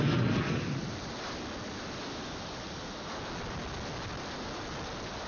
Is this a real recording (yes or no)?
yes